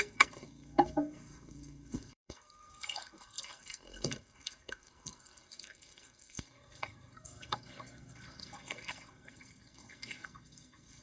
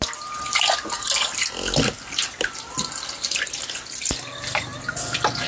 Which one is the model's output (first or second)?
first